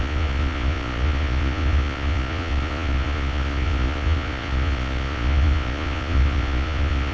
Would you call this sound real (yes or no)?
no